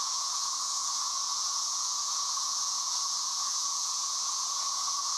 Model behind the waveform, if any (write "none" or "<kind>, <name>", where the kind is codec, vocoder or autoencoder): vocoder, Vocos